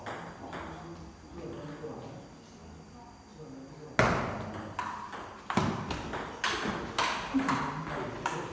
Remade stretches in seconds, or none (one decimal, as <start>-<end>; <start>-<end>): none